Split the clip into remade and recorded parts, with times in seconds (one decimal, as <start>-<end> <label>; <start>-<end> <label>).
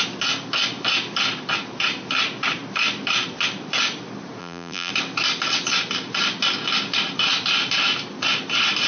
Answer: 0.0-4.4 recorded; 4.4-4.9 remade; 4.9-8.9 recorded